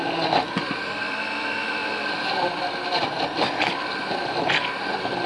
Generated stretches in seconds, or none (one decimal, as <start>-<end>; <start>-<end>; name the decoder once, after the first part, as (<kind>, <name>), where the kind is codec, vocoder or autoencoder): 1.8-5.3 (vocoder, BigVGAN v2)